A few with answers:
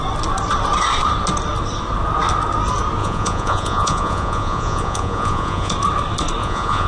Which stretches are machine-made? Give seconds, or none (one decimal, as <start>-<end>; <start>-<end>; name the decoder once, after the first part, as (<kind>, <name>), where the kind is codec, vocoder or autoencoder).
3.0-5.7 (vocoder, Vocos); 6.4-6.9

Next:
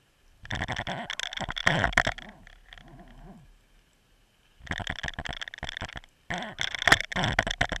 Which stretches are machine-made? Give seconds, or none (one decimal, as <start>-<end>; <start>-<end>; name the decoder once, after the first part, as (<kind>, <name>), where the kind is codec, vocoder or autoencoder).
none

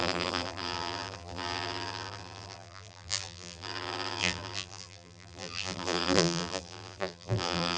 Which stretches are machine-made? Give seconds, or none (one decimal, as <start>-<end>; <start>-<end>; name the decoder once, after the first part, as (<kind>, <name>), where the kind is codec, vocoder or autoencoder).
0.0-7.8 (vocoder, BigVGAN v2)